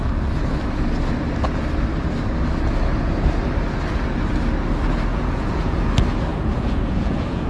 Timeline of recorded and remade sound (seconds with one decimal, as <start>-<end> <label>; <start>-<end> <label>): 0.0-5.1 recorded; 5.1-5.8 remade; 5.8-6.3 recorded; 6.3-7.5 remade